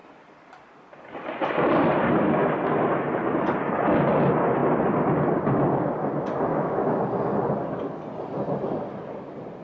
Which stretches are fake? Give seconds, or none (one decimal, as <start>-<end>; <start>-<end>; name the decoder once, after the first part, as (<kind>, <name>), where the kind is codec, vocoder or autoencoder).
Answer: 6.5-7.0 (autoencoder, DAC-VAE)